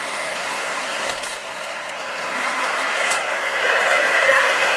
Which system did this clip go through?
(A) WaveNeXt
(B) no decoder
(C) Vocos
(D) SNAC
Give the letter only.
D